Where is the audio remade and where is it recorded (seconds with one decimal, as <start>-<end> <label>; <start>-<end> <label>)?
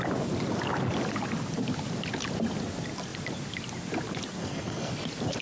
0.0-4.4 recorded; 4.4-4.9 remade; 4.9-5.4 recorded